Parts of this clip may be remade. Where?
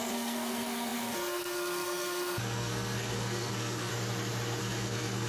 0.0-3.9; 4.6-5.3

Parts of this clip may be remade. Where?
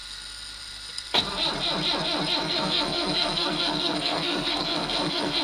2.4-5.4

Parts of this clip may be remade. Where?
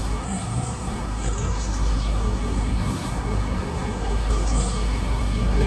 0.0-5.7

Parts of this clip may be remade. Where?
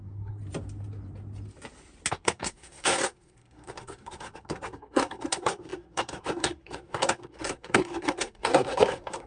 0.0-0.4; 2.1-9.3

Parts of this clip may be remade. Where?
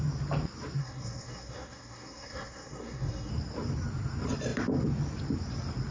0.8-3.3